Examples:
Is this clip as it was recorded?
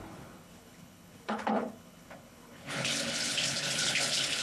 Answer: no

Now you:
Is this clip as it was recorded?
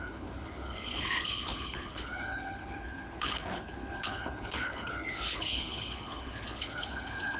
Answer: no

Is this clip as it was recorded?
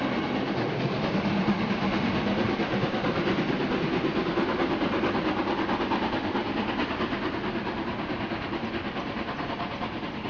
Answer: yes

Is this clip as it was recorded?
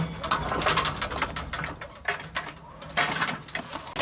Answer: yes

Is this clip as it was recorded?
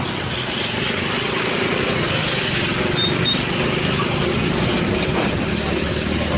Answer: yes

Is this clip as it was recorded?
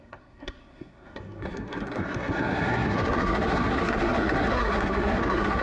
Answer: no